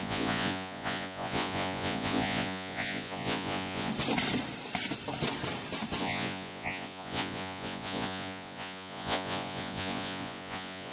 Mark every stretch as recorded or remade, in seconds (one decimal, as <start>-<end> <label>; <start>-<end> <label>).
0.0-3.9 remade; 3.9-6.0 recorded; 6.0-10.9 remade